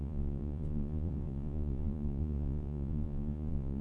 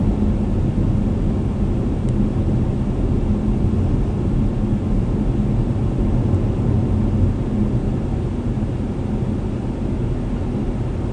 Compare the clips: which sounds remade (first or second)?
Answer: first